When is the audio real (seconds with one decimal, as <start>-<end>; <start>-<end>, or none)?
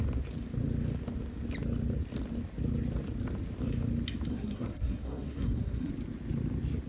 0.0-4.3; 5.9-6.9